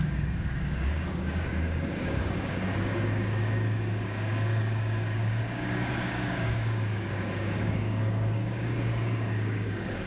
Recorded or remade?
remade